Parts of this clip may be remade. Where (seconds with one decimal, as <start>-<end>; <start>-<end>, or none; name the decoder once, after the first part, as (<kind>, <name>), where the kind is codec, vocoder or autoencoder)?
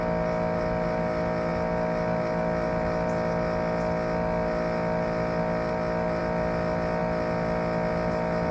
none